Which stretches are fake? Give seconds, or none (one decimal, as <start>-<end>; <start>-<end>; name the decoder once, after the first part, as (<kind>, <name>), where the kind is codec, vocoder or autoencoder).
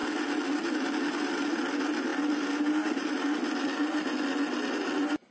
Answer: none